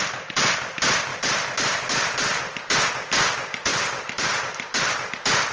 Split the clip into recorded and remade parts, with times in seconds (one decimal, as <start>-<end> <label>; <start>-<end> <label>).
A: 0.0-1.1 recorded; 1.1-2.4 remade; 2.4-3.7 recorded; 3.7-5.1 remade; 5.1-5.5 recorded